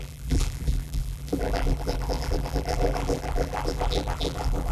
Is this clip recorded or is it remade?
remade